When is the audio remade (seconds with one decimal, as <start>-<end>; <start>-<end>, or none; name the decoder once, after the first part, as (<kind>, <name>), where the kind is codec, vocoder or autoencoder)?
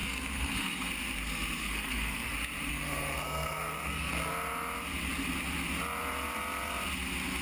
0.0-0.9 (codec, SNAC); 1.6-2.3; 2.7-4.3